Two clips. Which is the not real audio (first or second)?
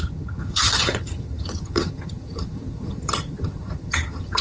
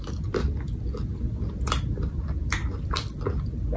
first